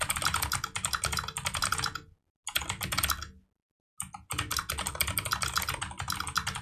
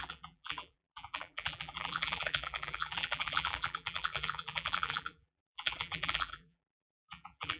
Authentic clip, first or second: first